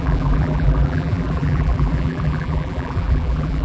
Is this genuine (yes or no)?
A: no